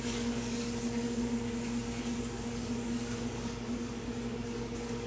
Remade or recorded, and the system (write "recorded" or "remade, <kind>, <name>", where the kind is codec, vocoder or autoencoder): remade, codec, DAC